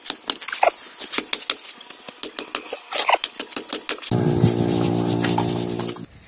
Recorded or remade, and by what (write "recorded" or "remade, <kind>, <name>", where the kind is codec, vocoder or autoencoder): recorded